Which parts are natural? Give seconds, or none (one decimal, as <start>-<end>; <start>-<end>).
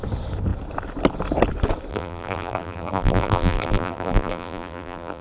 0.0-1.9